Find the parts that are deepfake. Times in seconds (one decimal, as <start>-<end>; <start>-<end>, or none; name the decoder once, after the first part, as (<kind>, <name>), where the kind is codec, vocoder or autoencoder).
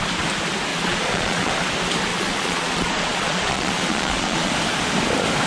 0.7-1.5 (vocoder, Vocos); 2.1-4.5